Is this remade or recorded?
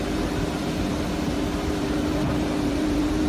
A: remade